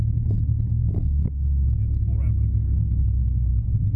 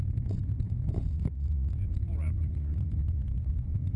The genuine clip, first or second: first